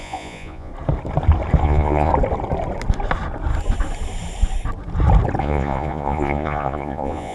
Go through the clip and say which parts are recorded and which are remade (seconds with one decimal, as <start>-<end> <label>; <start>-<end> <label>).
0.0-0.7 remade; 0.7-1.6 recorded; 1.6-2.1 remade; 2.1-5.4 recorded; 5.4-7.3 remade